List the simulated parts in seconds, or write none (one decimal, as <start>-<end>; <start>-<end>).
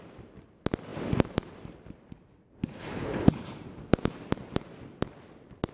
0.9-4.3